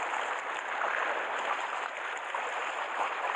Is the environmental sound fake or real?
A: real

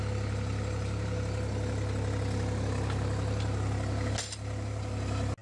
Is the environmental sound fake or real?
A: real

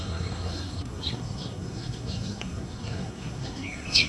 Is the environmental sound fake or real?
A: fake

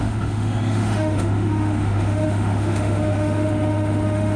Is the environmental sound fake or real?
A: fake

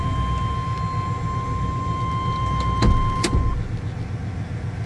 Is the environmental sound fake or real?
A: real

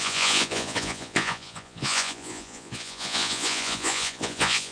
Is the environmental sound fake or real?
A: fake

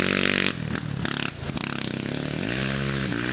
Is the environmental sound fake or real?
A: real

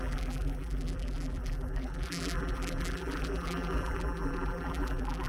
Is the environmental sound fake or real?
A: fake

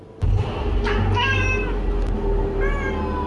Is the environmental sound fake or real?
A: real